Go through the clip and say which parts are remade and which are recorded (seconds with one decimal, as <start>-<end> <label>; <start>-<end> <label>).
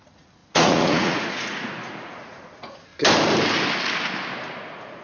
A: 0.0-2.9 remade; 2.9-4.5 recorded; 4.5-5.0 remade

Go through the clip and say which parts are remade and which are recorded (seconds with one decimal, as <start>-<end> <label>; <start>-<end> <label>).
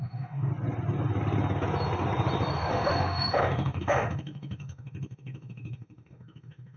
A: 0.0-0.5 remade; 0.5-2.7 recorded; 2.7-6.8 remade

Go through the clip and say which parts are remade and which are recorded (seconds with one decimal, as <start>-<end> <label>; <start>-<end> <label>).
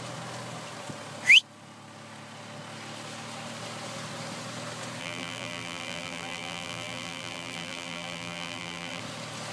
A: 0.0-5.0 recorded; 5.0-9.0 remade; 9.0-9.5 recorded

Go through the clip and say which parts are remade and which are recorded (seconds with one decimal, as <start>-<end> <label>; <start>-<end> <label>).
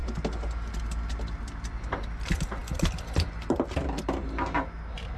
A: 0.0-5.2 recorded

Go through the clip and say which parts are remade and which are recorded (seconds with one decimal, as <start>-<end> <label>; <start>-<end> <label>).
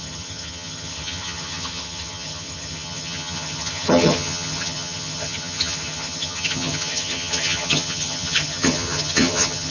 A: 0.0-9.7 remade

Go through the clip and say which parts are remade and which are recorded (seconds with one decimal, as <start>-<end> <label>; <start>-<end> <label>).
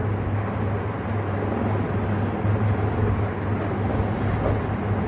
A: 0.0-5.1 recorded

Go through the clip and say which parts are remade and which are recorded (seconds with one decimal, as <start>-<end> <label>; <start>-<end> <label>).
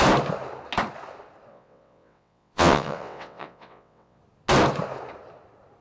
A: 0.0-1.5 recorded; 1.5-4.2 remade; 4.2-5.8 recorded